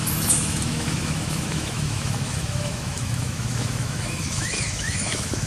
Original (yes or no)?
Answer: no